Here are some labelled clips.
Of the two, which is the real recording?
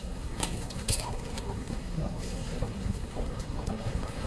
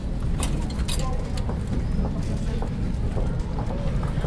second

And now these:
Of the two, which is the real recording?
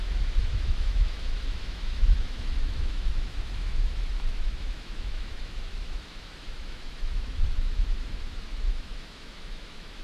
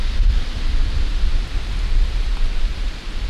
second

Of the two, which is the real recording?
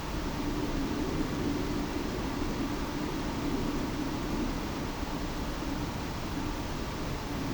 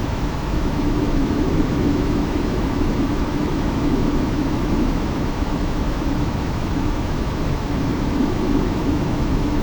first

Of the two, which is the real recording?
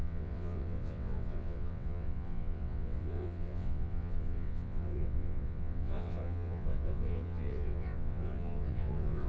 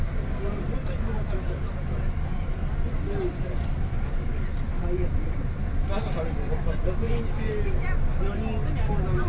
second